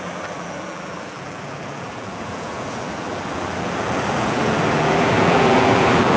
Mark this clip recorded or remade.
remade